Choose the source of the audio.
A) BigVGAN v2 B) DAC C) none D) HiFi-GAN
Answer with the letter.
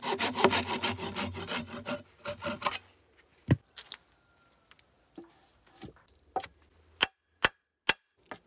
C